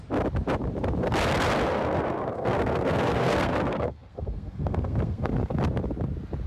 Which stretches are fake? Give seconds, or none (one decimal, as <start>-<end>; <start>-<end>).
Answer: 1.7-5.6